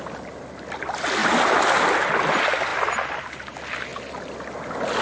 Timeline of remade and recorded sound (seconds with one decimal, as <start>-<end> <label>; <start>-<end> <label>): 0.0-5.0 recorded